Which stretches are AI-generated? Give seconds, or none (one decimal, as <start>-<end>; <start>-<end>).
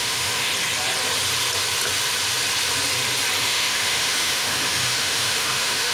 0.0-0.5; 3.4-5.9